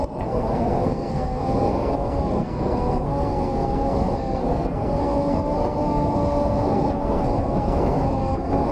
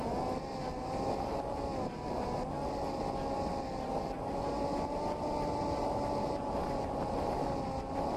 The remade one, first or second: first